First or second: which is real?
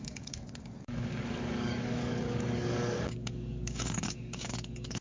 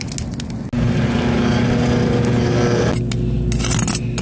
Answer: second